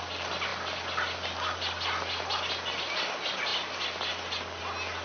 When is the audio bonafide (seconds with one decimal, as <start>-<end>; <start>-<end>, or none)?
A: 0.0-5.0